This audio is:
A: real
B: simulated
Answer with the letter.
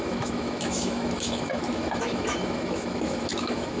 B